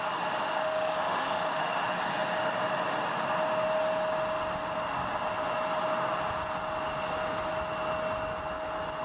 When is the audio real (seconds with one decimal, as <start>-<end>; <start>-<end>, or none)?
0.0-0.4; 1.8-9.0